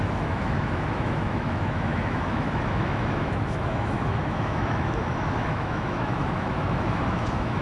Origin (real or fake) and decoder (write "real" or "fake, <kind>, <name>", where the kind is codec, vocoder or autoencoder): fake, autoencoder, DAC-VAE